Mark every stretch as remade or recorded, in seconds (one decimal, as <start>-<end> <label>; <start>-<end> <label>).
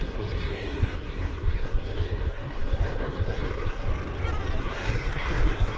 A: 0.0-3.9 remade; 3.9-4.6 recorded; 4.6-5.8 remade